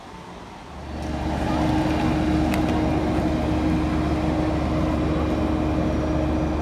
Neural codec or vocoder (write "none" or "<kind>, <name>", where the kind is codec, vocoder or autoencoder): none